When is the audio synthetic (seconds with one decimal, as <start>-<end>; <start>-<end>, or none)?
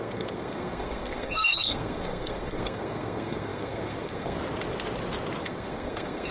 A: 0.0-4.4; 5.4-6.3